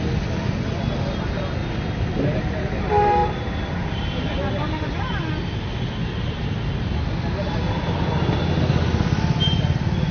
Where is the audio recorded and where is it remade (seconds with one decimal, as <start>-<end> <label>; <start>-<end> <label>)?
0.0-10.1 recorded